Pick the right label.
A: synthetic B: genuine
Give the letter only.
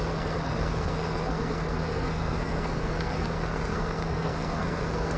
A